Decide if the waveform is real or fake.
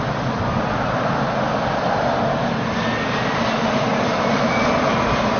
real